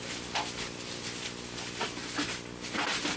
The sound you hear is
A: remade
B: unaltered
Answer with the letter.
B